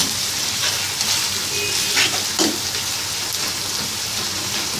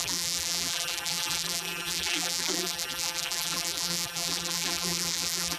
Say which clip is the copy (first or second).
second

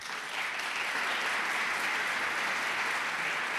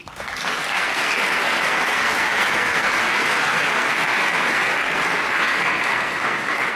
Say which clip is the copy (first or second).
second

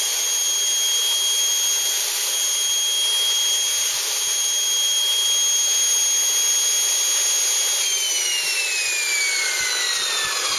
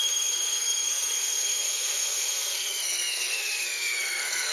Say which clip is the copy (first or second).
second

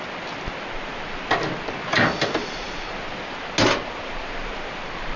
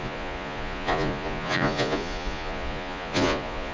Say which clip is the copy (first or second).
second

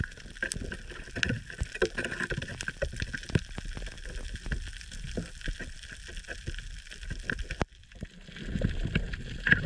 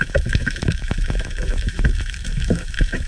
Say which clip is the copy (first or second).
second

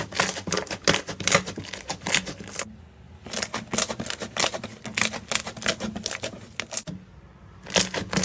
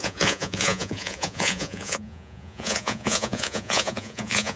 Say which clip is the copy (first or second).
second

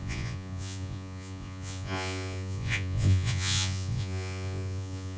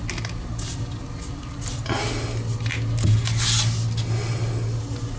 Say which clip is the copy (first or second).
first